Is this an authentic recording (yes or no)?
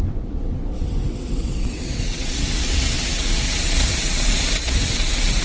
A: no